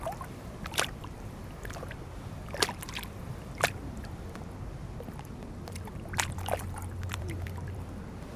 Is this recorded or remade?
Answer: remade